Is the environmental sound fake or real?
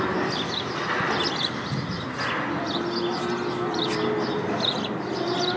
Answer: real